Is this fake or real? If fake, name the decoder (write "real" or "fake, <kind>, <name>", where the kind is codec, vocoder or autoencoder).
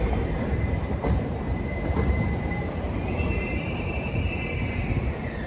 fake, vocoder, BigVGAN v2